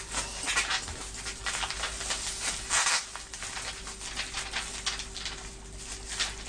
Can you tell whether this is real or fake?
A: real